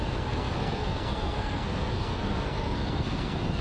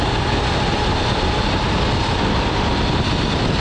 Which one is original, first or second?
second